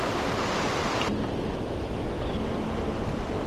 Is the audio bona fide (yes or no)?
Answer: yes